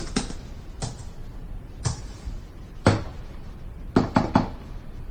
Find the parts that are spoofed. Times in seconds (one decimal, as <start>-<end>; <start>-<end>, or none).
none